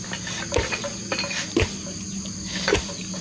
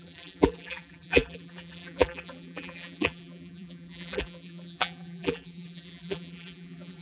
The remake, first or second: second